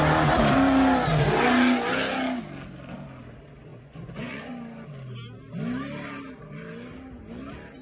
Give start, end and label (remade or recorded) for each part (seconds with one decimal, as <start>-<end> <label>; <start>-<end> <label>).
0.0-3.7 recorded; 3.7-4.5 remade; 4.5-7.8 recorded